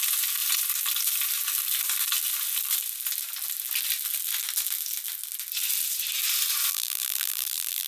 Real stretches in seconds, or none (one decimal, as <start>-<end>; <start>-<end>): 0.0-6.7